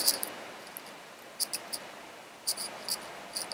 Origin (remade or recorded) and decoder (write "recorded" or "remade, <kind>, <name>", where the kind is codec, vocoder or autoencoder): recorded